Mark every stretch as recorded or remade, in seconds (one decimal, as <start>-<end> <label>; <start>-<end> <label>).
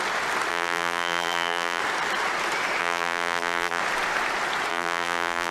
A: 0.0-0.5 recorded; 0.5-1.8 remade; 1.8-2.8 recorded; 2.8-3.8 remade; 3.8-4.7 recorded; 4.7-5.5 remade